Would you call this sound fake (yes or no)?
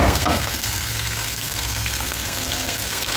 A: yes